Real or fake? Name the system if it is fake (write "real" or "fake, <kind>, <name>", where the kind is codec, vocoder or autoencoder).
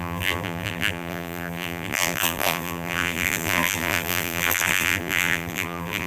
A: fake, vocoder, BigVGAN v2